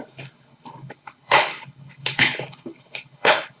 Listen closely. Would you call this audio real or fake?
fake